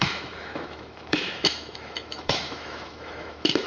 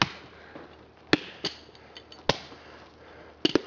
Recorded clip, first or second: second